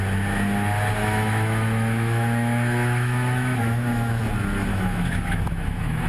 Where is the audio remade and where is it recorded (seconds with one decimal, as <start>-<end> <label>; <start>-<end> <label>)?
0.0-1.0 recorded; 1.0-4.2 remade; 4.2-4.7 recorded; 4.7-6.1 remade